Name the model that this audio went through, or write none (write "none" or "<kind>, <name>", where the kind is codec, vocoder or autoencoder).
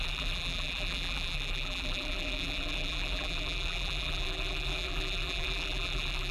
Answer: vocoder, BigVGAN v2